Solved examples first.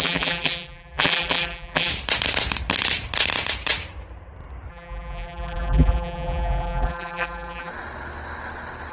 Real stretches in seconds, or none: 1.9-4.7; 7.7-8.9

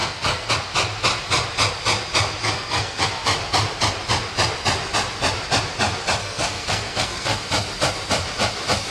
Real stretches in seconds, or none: 0.5-2.4; 3.1-6.2; 7.4-8.9

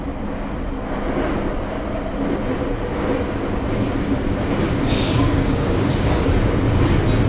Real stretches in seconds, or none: 0.0-4.6; 6.6-7.3

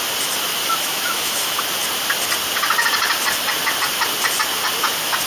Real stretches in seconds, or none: 0.0-0.6; 1.6-5.3

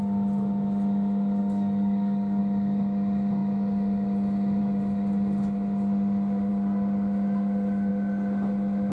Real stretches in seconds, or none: 0.0-1.4; 2.4-8.9

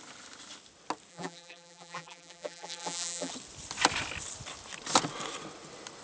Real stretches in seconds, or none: 0.0-1.1; 3.3-6.0

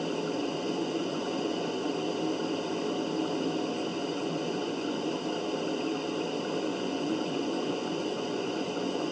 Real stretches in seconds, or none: 0.0-0.4; 1.9-3.9; 5.1-6.7

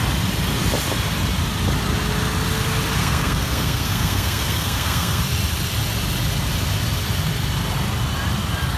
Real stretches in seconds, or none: 0.0-3.0; 5.2-8.8